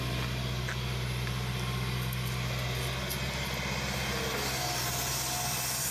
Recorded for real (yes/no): yes